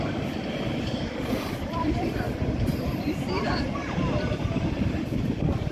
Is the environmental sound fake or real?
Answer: fake